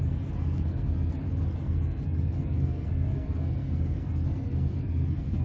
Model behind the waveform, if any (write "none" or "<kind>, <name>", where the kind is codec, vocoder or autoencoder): codec, SNAC